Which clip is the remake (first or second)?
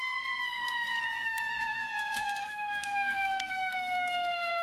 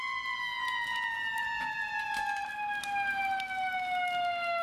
first